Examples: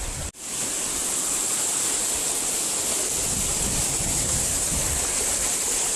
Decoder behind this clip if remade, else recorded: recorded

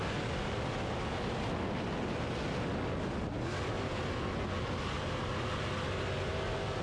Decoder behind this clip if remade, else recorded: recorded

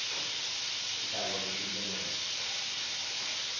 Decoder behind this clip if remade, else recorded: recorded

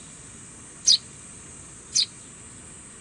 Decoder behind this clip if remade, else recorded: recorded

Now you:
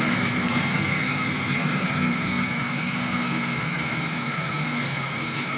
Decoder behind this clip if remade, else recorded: remade, codec, SNAC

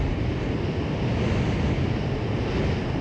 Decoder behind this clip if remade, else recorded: recorded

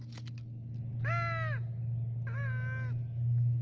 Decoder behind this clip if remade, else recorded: recorded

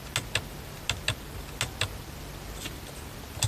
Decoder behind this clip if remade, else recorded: recorded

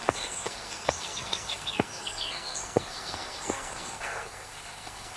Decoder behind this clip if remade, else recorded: remade, codec, SNAC